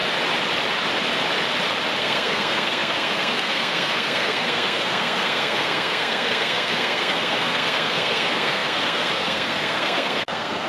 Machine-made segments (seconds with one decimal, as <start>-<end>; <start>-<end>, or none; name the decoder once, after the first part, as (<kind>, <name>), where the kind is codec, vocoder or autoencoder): 2.0-10.7 (codec, SNAC)